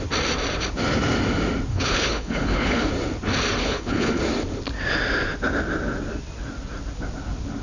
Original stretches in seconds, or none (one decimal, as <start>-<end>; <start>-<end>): 0.0-1.7; 2.9-3.6; 4.2-7.6